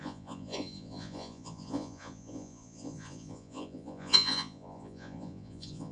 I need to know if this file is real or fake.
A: fake